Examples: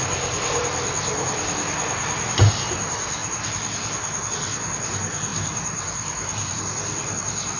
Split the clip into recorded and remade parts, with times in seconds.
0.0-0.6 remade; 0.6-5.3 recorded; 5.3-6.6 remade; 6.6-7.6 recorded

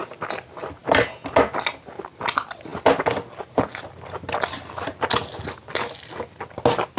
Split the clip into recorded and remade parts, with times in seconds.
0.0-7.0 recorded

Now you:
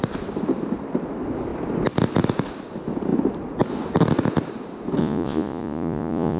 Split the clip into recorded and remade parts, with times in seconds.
0.0-5.0 recorded; 5.0-6.4 remade

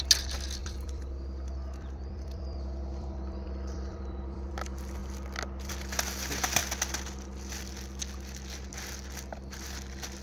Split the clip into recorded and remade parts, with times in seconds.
0.0-0.6 recorded; 0.6-4.5 remade; 4.5-10.2 recorded